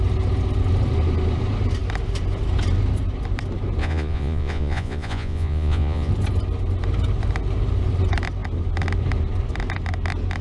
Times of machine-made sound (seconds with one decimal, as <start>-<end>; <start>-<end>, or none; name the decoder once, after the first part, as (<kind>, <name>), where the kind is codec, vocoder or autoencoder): 3.8-6.1 (vocoder, Vocos)